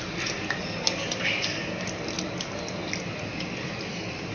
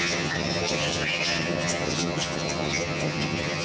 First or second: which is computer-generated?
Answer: second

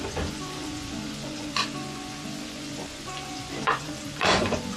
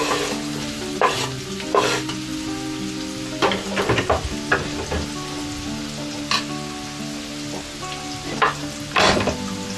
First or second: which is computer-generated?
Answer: first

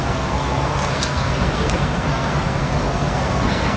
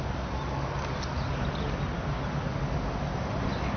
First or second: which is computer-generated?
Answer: first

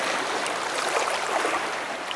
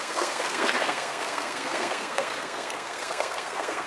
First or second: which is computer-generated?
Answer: second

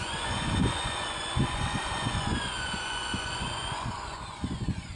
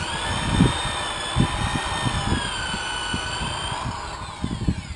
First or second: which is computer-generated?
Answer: first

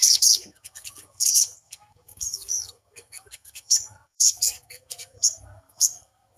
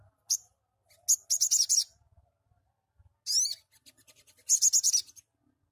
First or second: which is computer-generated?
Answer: first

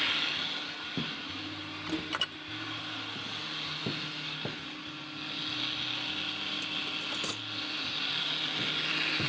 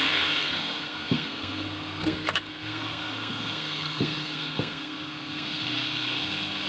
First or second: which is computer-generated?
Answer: second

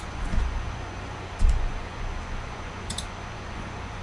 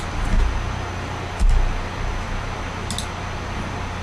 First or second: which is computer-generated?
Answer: first